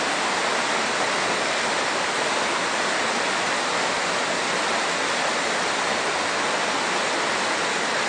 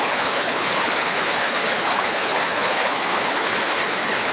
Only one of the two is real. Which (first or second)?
first